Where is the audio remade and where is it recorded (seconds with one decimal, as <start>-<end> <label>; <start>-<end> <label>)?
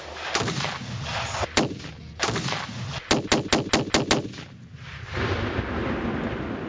0.0-1.1 recorded; 1.1-2.7 remade; 2.7-6.7 recorded